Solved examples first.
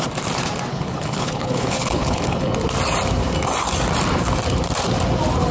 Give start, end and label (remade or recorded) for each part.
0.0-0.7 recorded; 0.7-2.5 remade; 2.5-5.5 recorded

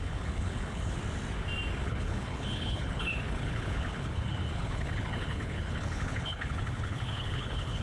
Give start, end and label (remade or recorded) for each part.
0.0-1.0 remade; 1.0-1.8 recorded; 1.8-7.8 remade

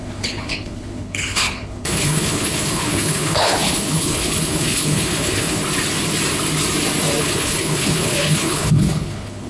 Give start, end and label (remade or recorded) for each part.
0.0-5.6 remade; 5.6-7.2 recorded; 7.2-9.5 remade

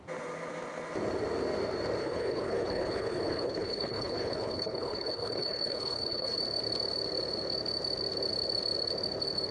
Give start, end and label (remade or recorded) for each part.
0.0-2.0 recorded; 2.0-6.4 remade; 6.4-9.5 recorded

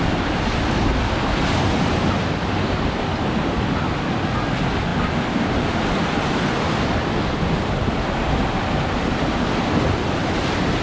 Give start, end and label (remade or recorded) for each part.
0.0-10.8 recorded